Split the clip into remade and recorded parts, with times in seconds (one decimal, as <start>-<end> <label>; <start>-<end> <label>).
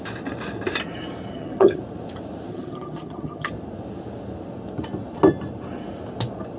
0.0-1.3 recorded; 1.3-1.8 remade; 1.8-2.5 recorded; 2.5-3.5 remade; 3.5-6.6 recorded